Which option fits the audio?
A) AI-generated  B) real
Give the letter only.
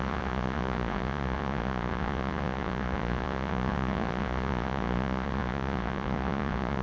A